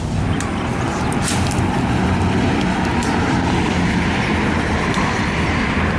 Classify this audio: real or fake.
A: real